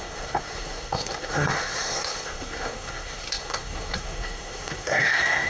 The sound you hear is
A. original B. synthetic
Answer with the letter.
B